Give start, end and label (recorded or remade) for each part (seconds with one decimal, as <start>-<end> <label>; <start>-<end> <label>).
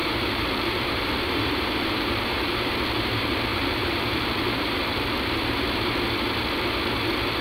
0.0-2.7 remade; 2.7-3.5 recorded; 3.5-4.8 remade; 4.8-7.4 recorded